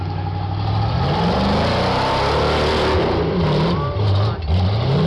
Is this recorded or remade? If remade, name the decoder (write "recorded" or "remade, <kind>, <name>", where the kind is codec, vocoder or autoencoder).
recorded